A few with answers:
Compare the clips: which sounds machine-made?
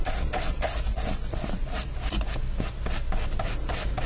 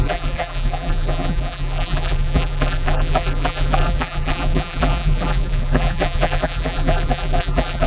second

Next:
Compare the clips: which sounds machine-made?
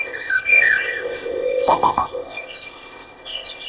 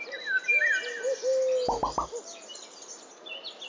first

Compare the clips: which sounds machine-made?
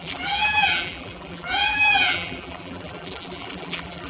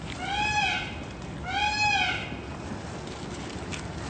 first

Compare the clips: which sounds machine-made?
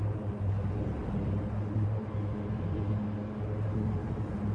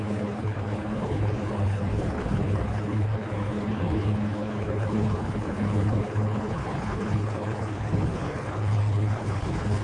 second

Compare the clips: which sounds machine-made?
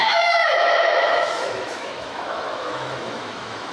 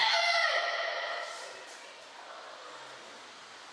first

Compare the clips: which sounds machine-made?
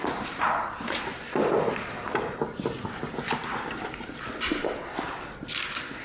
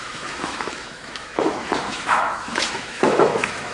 second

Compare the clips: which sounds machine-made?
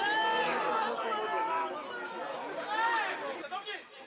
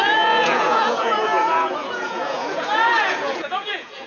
second